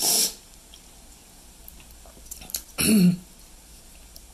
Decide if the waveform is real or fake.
real